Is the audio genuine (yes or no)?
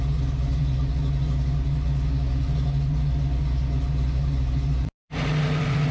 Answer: yes